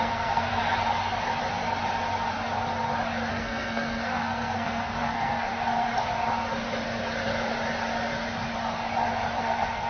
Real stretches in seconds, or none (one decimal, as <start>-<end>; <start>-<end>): 0.5-3.3; 5.9-9.4